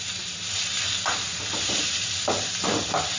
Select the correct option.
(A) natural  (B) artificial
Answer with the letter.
A